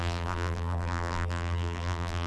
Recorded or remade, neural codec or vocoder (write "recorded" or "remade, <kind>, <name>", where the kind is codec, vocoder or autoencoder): remade, vocoder, BigVGAN v2